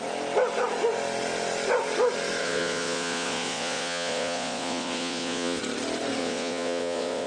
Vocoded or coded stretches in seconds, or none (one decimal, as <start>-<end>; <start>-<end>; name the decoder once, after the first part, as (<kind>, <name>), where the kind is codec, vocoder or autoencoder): 2.4-5.6 (vocoder, Vocos); 6.2-7.3

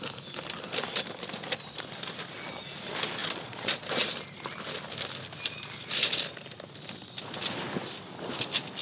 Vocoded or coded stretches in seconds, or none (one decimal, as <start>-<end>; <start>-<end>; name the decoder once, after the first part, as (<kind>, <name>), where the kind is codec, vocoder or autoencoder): 3.2-4.0 (vocoder, Vocos)

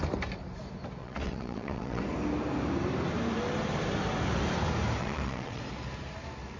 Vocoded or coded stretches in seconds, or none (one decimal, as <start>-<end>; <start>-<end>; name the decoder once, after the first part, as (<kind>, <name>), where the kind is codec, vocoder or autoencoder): 1.0-2.0 (vocoder, WaveNeXt); 5.0-5.6

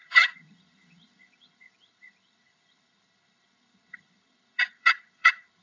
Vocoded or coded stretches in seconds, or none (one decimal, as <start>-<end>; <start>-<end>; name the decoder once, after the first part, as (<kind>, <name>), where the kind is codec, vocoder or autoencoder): 0.0-5.6 (vocoder, HiFi-GAN)

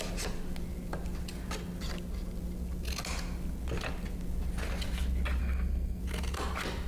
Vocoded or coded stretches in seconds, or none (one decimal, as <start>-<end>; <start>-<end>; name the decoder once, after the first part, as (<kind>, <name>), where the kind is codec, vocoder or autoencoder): 5.4-6.0 (codec, SNAC)

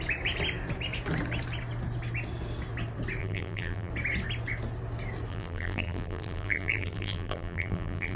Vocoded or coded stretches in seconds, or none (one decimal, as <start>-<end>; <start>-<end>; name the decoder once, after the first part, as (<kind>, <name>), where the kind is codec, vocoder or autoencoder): 3.2-3.9 (vocoder, BigVGAN v2); 5.3-8.2

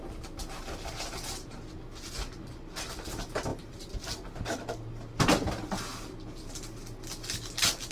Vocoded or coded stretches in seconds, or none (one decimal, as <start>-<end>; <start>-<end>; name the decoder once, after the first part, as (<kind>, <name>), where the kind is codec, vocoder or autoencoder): none